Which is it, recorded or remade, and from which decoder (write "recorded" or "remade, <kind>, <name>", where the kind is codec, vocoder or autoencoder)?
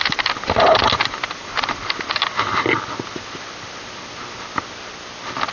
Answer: recorded